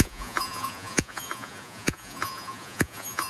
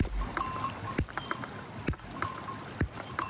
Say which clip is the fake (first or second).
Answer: first